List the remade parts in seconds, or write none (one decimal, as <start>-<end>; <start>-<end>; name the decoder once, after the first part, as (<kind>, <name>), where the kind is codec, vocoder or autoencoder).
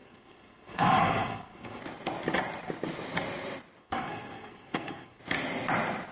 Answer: 0.0-1.8 (codec, SNAC); 3.8-5.2